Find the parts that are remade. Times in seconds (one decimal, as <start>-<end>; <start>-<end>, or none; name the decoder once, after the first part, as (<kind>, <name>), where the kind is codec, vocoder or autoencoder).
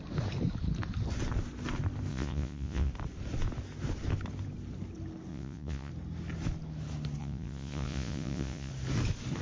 2.1-2.9 (vocoder, Vocos); 5.3-5.9; 7.2-8.7